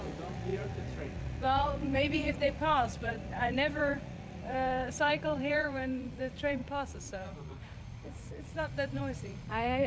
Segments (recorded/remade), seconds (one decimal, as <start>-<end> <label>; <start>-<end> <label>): 0.0-9.9 remade